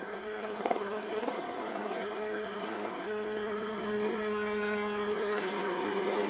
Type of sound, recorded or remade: remade